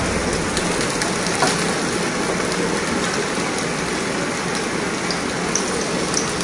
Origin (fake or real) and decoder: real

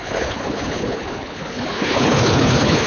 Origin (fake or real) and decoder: fake, codec, HILCodec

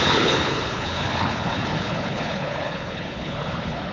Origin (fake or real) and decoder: fake, codec, HILCodec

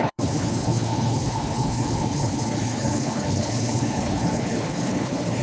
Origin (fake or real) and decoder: fake, codec, HILCodec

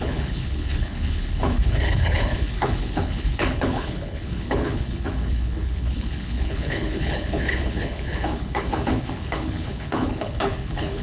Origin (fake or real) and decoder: fake, codec, HILCodec